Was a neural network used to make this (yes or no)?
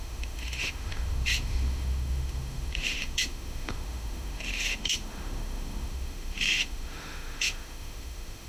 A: yes